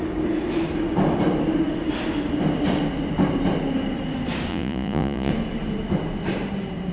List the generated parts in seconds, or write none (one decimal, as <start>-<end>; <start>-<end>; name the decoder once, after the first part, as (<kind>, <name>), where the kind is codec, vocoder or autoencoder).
4.5-5.3 (vocoder, Vocos)